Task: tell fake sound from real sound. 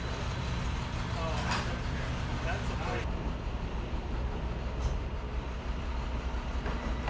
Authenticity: real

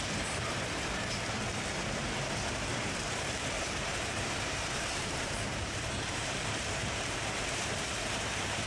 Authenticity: fake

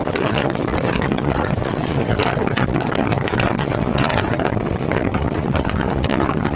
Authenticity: fake